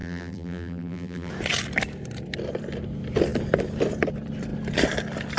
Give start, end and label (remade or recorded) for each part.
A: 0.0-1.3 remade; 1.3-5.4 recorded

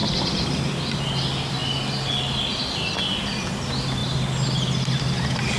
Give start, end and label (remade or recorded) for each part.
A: 0.0-1.0 remade; 1.0-5.6 recorded

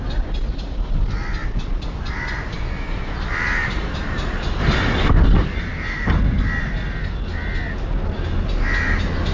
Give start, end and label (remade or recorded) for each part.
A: 0.0-1.4 recorded; 1.4-2.1 remade; 2.1-4.6 recorded; 4.6-5.1 remade; 5.1-9.3 recorded

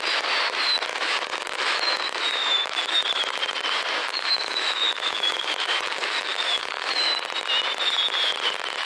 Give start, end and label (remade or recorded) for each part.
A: 0.0-0.9 recorded; 0.9-3.4 remade; 3.4-4.0 recorded; 4.0-7.1 remade; 7.1-8.8 recorded

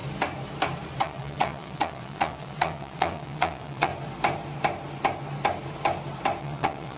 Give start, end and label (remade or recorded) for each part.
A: 0.0-1.0 recorded; 1.0-3.9 remade; 3.9-6.4 recorded; 6.4-7.0 remade